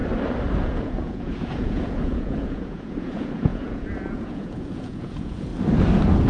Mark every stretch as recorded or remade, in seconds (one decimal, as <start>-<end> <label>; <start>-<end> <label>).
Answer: 0.0-0.6 recorded; 0.6-5.5 remade; 5.5-6.3 recorded